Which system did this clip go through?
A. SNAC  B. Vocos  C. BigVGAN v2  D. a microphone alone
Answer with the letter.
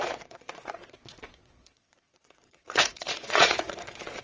B